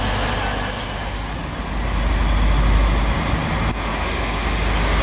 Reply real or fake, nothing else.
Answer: real